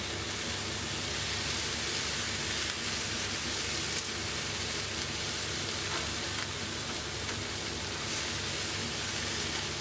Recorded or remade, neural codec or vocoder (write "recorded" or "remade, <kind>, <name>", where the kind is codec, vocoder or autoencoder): recorded